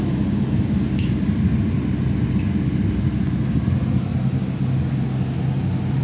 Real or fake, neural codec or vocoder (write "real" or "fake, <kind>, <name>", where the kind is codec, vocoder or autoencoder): real